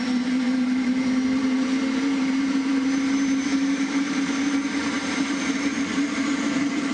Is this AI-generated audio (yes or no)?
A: yes